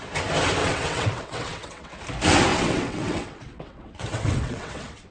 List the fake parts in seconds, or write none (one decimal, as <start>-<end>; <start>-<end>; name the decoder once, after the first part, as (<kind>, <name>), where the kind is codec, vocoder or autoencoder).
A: 0.6-2.0 (vocoder, WaveNeXt); 2.5-5.1